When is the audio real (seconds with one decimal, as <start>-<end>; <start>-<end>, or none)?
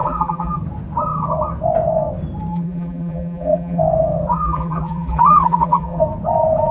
0.6-2.5; 3.8-4.3; 6.0-6.7